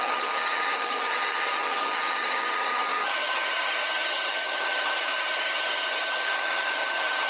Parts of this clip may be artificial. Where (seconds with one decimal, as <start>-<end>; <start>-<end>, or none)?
0.0-7.3